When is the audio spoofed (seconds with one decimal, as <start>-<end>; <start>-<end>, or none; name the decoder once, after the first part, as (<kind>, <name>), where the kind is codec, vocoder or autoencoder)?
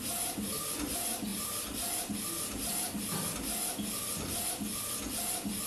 none